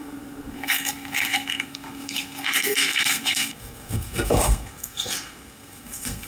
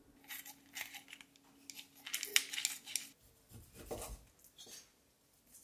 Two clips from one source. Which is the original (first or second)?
second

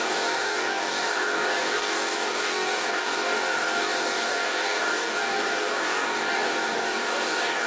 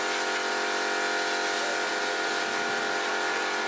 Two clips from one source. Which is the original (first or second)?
second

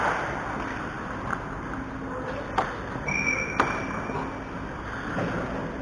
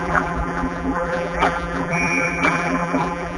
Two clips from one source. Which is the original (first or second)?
first